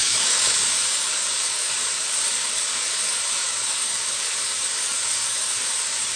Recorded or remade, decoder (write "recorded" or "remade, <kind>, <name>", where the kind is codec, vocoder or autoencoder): remade, codec, DAC